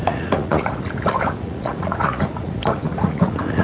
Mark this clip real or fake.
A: fake